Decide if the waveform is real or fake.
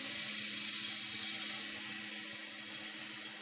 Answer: real